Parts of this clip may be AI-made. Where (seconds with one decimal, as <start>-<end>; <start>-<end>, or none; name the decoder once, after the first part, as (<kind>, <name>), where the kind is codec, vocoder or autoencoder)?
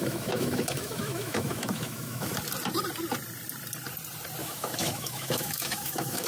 0.0-2.3 (autoencoder, DAC-VAE); 4.4-6.3